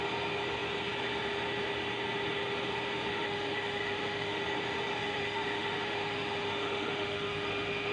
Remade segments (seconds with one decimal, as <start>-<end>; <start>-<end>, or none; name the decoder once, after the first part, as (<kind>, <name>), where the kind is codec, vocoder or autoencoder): 3.1-4.4 (autoencoder, DAC-VAE); 5.0-7.9